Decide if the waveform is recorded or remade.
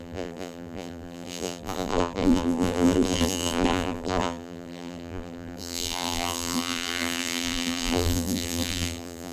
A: remade